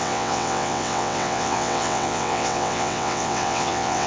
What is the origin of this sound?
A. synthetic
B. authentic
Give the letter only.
A